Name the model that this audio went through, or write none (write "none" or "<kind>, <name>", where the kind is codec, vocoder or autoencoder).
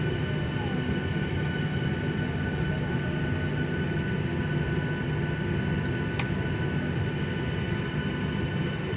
none